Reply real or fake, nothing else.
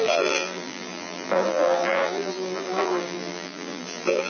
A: fake